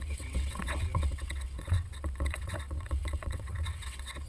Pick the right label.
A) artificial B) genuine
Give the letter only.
A